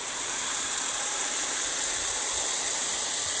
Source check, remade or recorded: remade